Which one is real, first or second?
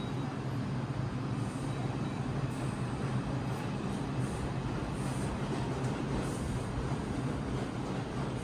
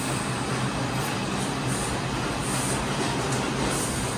second